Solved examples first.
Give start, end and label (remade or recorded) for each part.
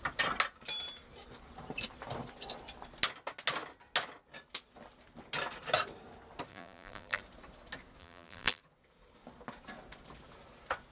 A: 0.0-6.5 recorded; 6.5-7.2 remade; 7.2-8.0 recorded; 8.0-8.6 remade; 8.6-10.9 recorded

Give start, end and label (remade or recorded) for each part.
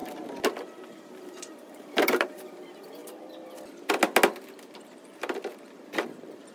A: 0.0-1.1 recorded; 1.1-3.0 remade; 3.0-4.6 recorded; 4.6-6.5 remade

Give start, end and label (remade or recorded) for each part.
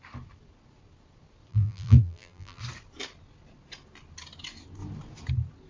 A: 0.0-1.5 recorded; 1.5-2.6 remade; 2.6-5.7 recorded